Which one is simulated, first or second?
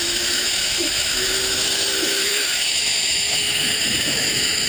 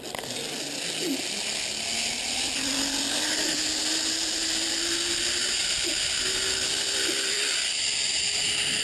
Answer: first